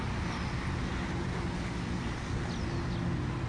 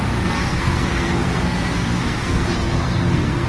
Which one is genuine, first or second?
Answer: first